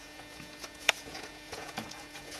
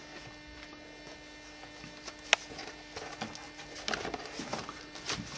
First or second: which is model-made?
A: first